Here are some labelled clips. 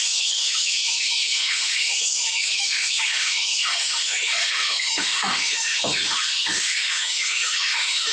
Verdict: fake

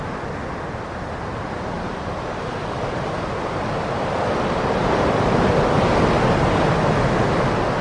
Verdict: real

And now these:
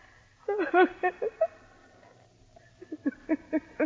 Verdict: real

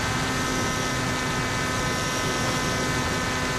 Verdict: real